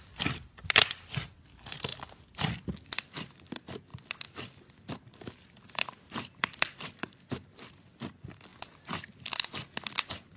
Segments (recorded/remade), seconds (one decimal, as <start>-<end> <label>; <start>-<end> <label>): 0.0-8.5 remade; 8.5-10.0 recorded; 10.0-10.4 remade